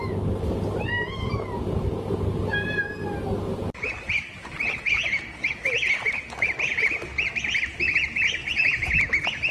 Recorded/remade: recorded